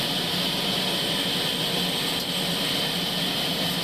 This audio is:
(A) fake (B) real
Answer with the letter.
B